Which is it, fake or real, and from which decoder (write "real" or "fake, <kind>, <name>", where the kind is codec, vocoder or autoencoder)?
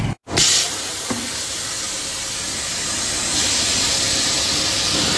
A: real